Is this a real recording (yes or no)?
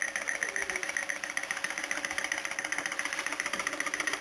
yes